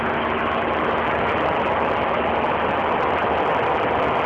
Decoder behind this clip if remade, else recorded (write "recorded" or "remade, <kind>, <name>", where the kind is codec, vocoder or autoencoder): recorded